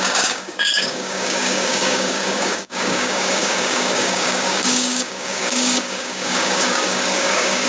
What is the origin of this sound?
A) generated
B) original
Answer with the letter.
A